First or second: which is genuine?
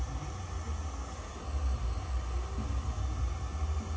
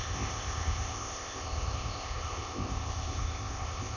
first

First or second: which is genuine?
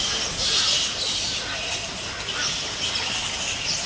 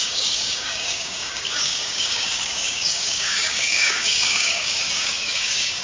first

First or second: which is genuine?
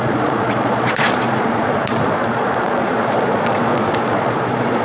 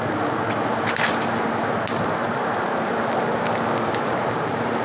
second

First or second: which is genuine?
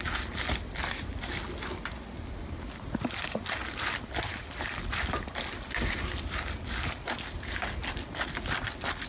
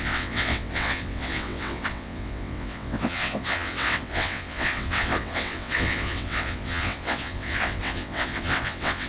first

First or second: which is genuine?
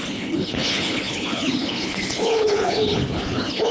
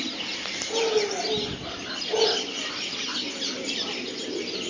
second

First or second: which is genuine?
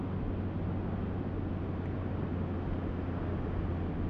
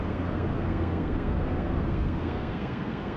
first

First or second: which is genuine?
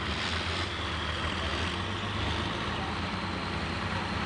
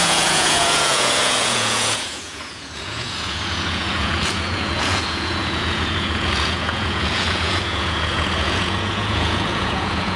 first